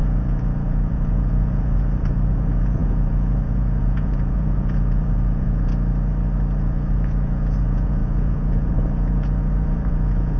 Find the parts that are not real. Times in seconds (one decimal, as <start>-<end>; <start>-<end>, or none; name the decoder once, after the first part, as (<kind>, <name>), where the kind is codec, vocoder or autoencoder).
0.0-5.7 (vocoder, Vocos); 6.6-10.4